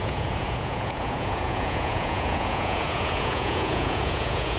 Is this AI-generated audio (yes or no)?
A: yes